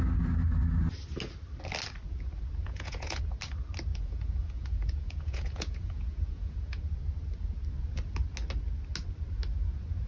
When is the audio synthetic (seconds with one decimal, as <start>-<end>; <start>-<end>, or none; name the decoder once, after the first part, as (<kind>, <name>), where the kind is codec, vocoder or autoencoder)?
2.6-3.2 (vocoder, Vocos); 3.9-6.8